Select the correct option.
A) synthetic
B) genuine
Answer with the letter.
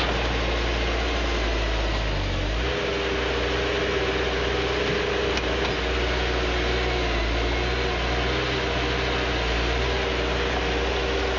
B